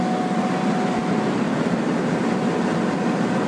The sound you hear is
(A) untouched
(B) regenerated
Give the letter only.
A